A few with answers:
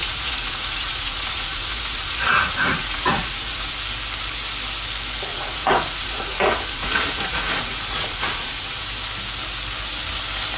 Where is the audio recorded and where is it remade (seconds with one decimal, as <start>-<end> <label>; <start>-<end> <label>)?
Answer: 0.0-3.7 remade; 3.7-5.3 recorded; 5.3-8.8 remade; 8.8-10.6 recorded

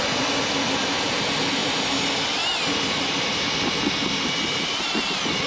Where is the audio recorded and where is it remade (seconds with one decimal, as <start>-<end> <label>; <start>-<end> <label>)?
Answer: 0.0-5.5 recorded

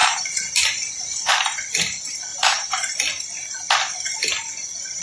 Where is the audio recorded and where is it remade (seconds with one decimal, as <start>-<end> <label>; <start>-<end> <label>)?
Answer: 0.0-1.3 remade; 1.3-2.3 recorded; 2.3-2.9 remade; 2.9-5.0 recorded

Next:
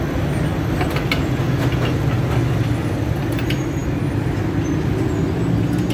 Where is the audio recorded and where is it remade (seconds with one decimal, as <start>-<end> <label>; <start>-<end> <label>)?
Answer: 0.0-5.9 recorded

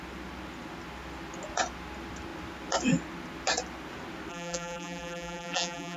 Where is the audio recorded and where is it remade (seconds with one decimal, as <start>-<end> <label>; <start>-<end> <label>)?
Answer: 0.0-4.3 recorded; 4.3-6.0 remade

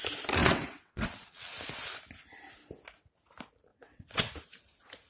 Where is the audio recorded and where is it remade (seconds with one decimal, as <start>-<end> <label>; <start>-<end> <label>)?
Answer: 0.0-0.4 recorded; 0.4-1.6 remade; 1.6-3.7 recorded; 3.7-4.3 remade; 4.3-5.1 recorded

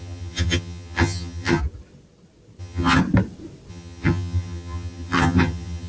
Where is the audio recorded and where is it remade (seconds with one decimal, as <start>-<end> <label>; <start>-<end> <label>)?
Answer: 0.0-1.6 remade; 1.6-2.6 recorded; 2.6-3.0 remade; 3.0-3.7 recorded; 3.7-5.9 remade

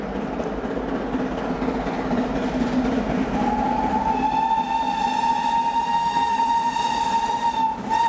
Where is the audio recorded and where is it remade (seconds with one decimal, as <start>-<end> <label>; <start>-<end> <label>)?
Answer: 0.0-5.9 recorded; 5.9-6.4 remade; 6.4-8.1 recorded